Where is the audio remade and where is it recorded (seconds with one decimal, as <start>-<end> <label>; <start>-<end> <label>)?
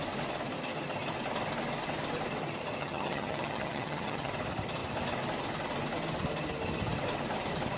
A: 0.0-2.8 recorded; 2.8-4.3 remade; 4.3-7.8 recorded